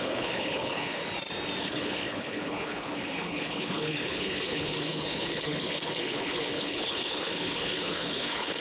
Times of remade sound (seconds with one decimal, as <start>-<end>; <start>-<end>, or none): 0.0-1.0; 1.6-8.6